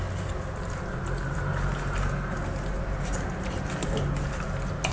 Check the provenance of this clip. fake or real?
real